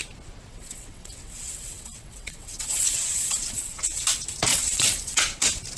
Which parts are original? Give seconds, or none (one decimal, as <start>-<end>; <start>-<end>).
0.0-0.5; 4.0-4.5; 5.2-5.8